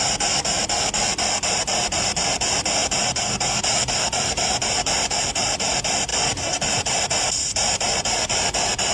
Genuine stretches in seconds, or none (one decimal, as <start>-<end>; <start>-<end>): 2.8-3.6